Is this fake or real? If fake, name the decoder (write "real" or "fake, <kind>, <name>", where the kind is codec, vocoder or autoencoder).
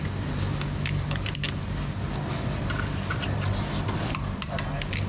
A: real